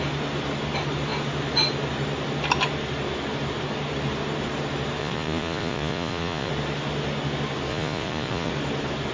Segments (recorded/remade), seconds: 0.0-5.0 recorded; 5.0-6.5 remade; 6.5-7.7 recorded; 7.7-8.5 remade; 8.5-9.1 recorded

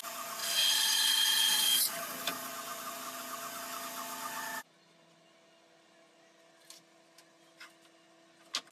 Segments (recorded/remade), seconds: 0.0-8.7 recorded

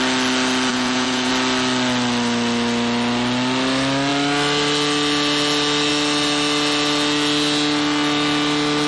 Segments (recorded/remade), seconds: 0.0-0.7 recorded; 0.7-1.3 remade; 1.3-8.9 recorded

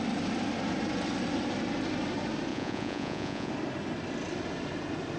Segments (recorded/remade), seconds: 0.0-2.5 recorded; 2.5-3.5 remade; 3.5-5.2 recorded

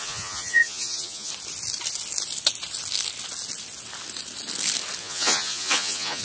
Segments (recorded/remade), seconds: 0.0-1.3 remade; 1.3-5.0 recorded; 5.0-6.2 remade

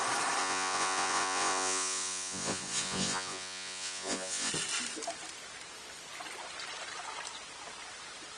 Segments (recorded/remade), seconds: 0.0-0.4 recorded; 0.4-4.5 remade; 4.5-8.4 recorded

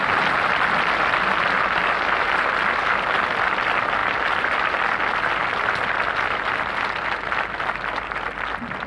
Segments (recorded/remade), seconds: 0.0-8.9 recorded